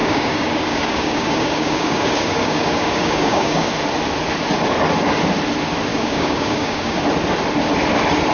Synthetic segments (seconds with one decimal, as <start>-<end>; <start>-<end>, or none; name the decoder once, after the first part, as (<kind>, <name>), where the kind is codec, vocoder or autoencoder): 0.0-3.7 (codec, DAC); 5.9-7.0